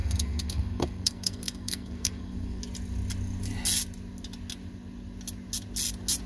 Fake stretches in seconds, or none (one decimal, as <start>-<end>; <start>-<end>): 0.0-2.6